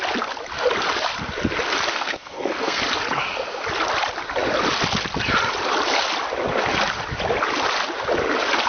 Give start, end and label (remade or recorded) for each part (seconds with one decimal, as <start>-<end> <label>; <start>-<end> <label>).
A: 0.0-1.9 recorded; 1.9-2.8 remade; 2.8-8.7 recorded